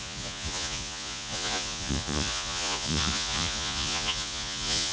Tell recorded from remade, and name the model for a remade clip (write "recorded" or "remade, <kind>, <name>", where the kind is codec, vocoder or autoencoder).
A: remade, vocoder, Vocos